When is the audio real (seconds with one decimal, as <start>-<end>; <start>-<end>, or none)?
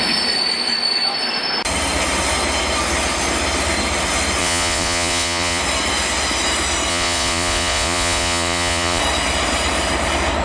0.0-4.4; 5.6-6.9; 9.0-10.4